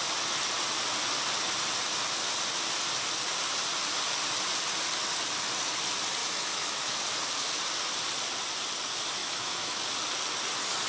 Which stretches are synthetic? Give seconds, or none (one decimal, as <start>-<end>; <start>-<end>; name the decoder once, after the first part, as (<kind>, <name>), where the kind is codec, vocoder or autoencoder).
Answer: 6.2-7.0 (autoencoder, DAC-VAE); 9.2-9.8